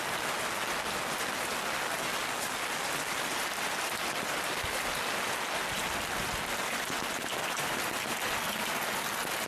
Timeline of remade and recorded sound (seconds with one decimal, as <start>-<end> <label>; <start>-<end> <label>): 0.0-9.5 recorded